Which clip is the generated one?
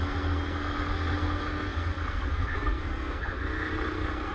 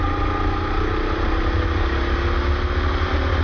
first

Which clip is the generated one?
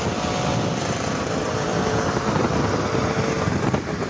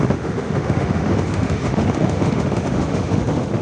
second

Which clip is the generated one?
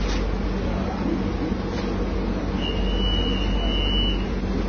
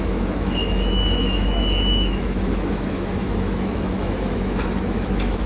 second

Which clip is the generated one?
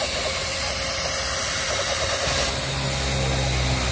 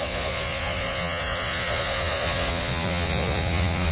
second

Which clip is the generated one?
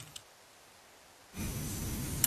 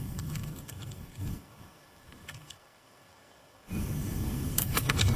second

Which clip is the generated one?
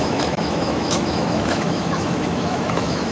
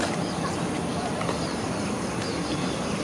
first